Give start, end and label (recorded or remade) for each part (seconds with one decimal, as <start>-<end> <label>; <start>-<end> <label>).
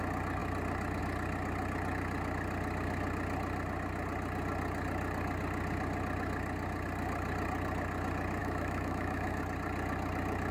0.0-8.4 recorded; 8.4-9.4 remade; 9.4-10.5 recorded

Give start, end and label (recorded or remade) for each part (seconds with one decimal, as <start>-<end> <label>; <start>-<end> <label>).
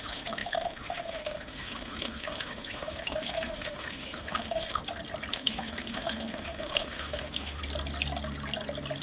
0.0-4.8 remade; 4.8-5.3 recorded; 5.3-7.6 remade; 7.6-9.0 recorded